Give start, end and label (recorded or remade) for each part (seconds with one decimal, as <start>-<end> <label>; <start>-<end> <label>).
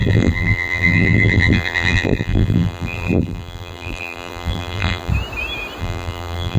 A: 0.0-5.1 remade; 5.1-5.8 recorded; 5.8-6.6 remade